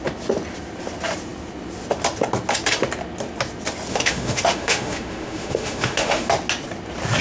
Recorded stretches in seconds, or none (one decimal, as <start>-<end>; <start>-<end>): 0.0-3.9; 6.3-7.2